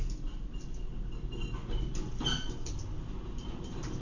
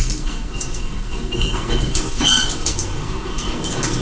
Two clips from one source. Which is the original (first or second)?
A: first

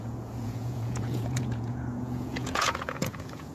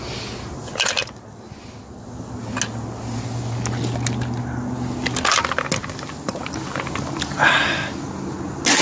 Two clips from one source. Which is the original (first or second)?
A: second